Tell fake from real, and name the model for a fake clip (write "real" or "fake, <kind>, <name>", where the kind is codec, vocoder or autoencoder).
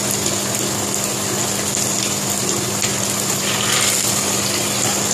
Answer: real